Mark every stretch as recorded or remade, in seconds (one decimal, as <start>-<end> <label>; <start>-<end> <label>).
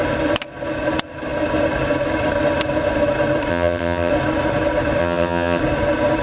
0.0-3.5 recorded; 3.5-4.1 remade; 4.1-5.0 recorded; 5.0-5.6 remade; 5.6-6.2 recorded